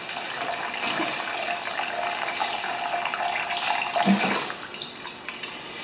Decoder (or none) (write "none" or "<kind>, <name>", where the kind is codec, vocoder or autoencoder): none